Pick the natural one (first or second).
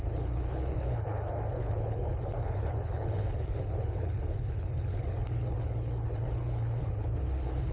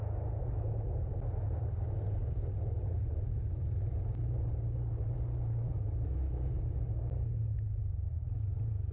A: second